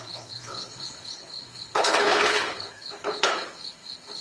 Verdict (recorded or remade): remade